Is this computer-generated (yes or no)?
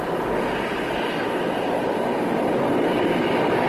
no